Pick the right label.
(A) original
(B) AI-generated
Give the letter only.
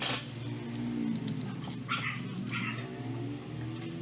A